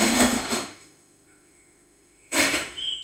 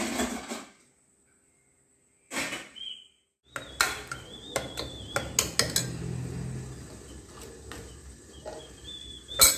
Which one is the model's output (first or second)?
first